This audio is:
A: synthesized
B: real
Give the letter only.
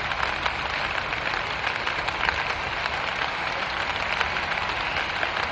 B